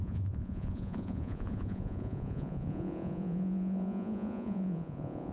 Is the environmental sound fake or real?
fake